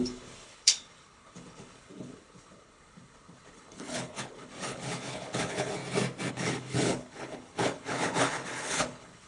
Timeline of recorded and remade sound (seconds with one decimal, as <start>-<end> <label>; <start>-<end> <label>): 0.0-5.8 remade; 5.8-6.3 recorded; 6.3-9.3 remade